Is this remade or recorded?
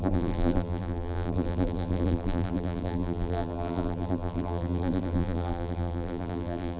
remade